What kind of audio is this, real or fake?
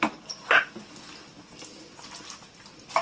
real